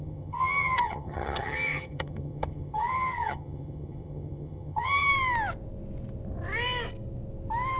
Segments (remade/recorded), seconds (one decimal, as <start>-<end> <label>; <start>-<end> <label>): 0.0-5.1 remade; 5.1-7.8 recorded